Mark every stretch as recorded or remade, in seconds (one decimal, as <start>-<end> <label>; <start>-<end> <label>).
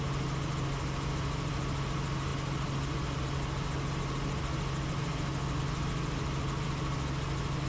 0.0-7.7 recorded